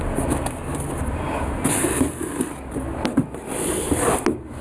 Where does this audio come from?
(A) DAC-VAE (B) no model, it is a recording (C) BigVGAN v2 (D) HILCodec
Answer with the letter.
B